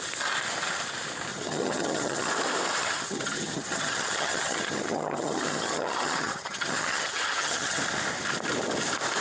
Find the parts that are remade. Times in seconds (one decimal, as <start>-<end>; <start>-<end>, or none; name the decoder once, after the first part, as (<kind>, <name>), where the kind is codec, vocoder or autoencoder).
1.3-2.3 (vocoder, HiFi-GAN); 2.8-7.8